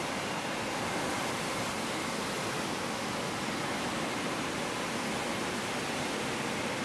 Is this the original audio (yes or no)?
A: yes